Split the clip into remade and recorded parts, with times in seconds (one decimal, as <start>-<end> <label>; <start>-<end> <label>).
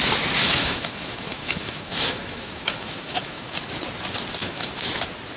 0.0-0.4 recorded; 0.4-3.6 remade; 3.6-4.4 recorded; 4.4-5.0 remade; 5.0-5.4 recorded